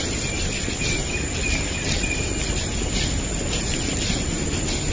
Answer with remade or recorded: recorded